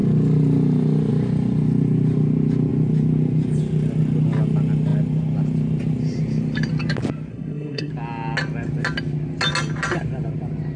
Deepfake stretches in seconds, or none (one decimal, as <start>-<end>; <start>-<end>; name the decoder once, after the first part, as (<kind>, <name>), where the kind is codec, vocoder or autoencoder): 7.3-7.9 (codec, SNAC)